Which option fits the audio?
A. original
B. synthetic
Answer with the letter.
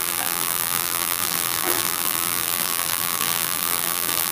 B